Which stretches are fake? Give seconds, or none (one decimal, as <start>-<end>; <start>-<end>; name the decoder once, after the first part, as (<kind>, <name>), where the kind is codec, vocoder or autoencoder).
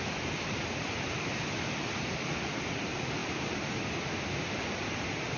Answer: none